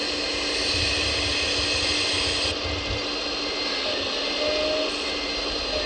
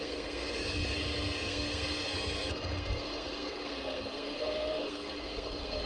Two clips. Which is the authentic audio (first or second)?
first